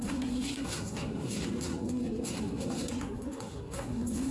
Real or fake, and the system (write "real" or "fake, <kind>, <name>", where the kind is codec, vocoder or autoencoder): fake, codec, SNAC